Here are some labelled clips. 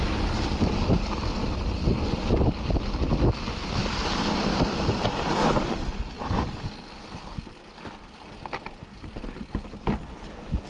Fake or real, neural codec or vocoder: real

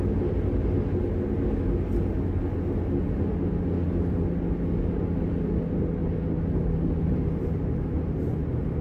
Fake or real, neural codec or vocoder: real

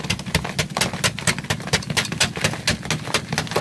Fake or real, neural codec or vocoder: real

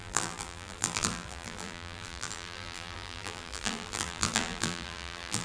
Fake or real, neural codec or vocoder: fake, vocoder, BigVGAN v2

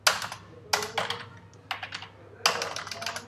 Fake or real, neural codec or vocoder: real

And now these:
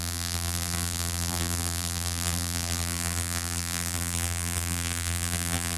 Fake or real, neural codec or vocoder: fake, vocoder, BigVGAN v2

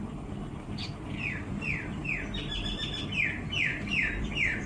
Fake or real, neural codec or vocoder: fake, vocoder, BigVGAN v2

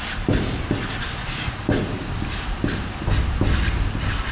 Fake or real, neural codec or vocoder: real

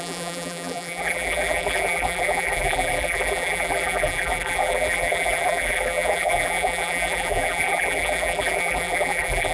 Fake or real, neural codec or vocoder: fake, vocoder, BigVGAN v2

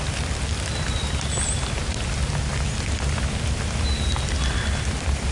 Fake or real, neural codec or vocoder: fake, vocoder, BigVGAN v2